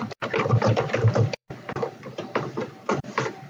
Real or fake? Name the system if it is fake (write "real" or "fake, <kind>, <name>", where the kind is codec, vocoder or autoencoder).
fake, vocoder, BigVGAN v2